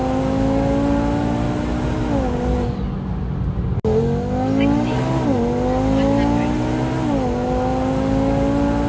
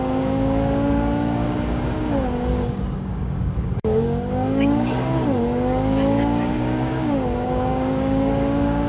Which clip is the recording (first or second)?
first